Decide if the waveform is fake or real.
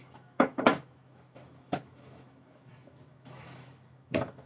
fake